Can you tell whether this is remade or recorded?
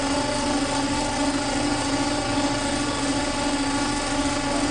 recorded